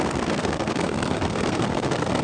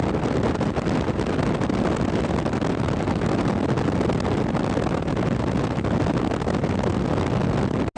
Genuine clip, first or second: second